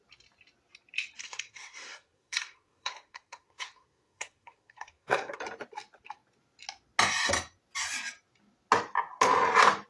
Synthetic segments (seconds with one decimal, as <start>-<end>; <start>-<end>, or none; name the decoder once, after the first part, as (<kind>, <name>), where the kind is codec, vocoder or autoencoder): 1.2-5.4 (codec, SNAC)